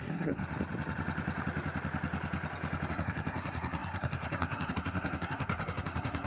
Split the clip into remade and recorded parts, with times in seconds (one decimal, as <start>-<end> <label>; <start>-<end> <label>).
0.0-0.4 remade; 0.4-2.9 recorded; 2.9-6.3 remade